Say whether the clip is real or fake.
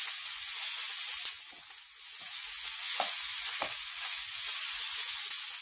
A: fake